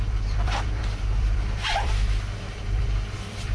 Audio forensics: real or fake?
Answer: fake